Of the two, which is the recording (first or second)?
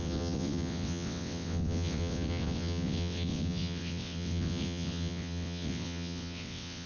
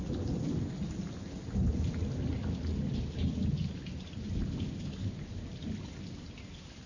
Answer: second